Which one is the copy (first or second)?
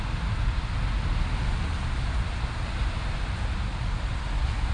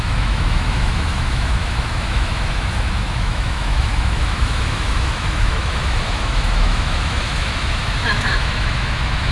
second